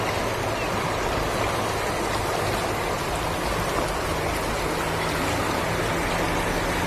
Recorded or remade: recorded